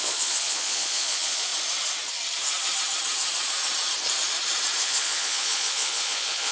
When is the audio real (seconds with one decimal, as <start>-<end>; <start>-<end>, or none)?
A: 1.5-4.8